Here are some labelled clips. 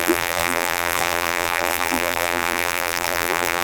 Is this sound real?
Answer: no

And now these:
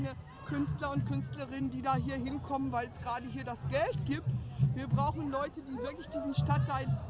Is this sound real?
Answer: yes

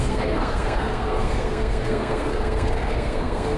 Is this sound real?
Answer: no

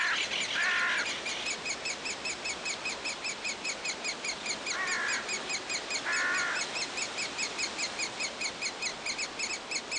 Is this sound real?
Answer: yes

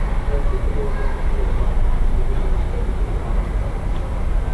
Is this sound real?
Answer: yes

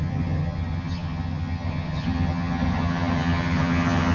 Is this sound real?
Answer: no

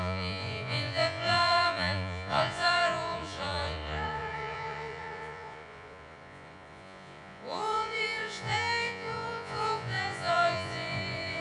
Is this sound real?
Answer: no